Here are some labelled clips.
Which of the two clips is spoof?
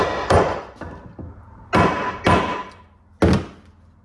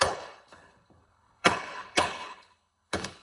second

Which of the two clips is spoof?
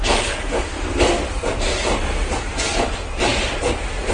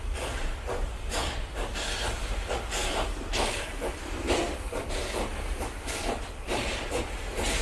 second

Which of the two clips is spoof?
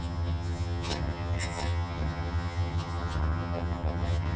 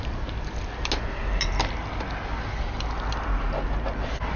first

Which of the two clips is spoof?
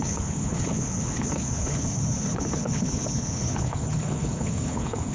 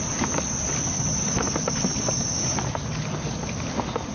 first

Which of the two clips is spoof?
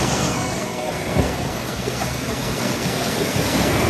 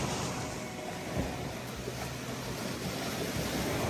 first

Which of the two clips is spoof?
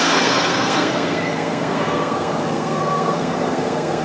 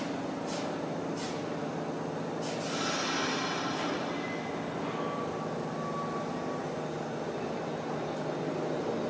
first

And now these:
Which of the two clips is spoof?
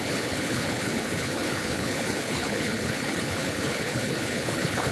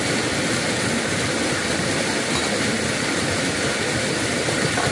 first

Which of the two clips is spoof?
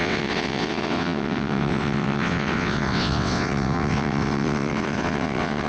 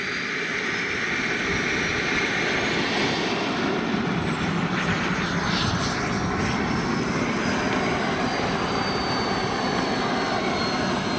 first